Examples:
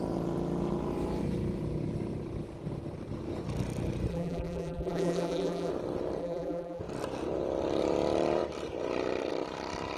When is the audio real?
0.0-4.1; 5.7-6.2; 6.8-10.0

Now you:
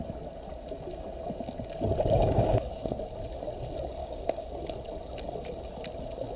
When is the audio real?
0.0-2.2; 2.7-4.0; 4.5-6.4

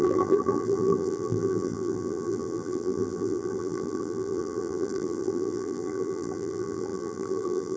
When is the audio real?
none

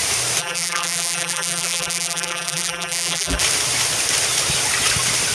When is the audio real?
0.0-0.4; 3.4-5.3

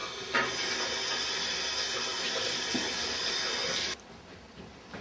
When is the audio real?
0.0-5.0

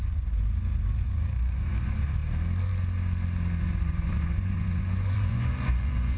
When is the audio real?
2.2-3.6

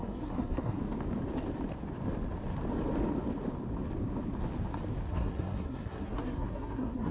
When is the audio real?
0.8-5.1